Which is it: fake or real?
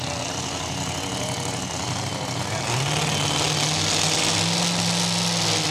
real